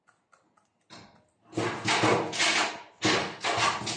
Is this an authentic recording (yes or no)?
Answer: yes